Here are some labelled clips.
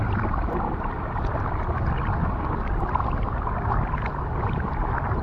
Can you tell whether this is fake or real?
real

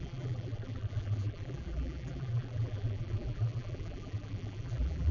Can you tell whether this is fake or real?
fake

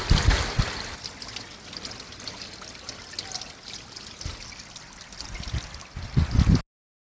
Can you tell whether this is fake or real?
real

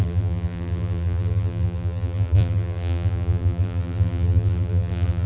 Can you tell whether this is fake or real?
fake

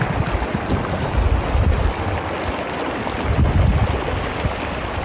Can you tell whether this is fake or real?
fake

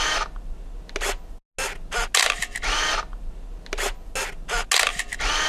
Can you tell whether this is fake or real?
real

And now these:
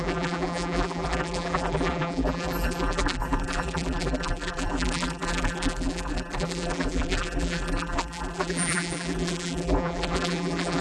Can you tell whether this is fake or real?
fake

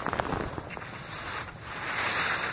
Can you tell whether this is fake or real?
real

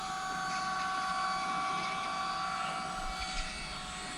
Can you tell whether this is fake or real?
real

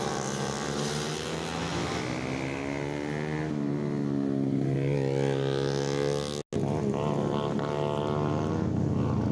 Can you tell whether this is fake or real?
real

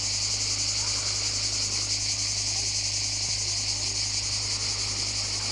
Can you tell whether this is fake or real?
real